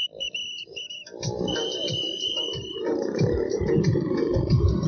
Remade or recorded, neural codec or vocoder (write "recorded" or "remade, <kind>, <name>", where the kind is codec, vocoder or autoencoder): recorded